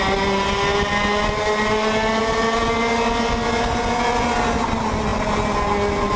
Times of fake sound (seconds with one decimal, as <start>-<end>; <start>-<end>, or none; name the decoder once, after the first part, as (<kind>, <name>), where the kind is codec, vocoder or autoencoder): none